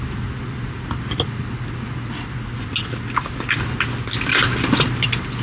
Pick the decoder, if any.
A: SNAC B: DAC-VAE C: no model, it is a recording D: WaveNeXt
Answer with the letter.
C